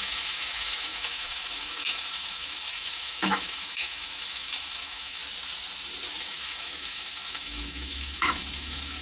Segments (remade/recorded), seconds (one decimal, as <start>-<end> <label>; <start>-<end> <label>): 0.0-5.2 remade; 5.2-6.2 recorded; 6.2-9.0 remade

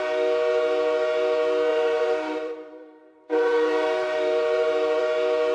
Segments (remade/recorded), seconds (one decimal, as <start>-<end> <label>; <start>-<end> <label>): 0.0-1.7 recorded; 1.7-5.0 remade; 5.0-5.5 recorded

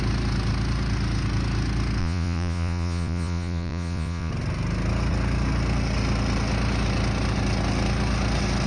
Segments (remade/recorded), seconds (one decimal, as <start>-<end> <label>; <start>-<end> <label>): 0.0-2.0 recorded; 2.0-4.3 remade; 4.3-8.7 recorded

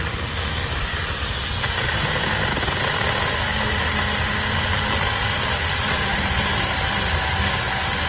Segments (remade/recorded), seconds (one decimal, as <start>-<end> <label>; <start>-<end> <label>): 0.0-6.1 recorded; 6.1-7.3 remade; 7.3-8.1 recorded